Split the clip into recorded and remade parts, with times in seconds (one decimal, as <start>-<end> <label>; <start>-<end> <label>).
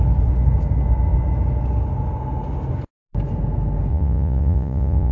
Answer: 0.0-3.9 recorded; 3.9-5.1 remade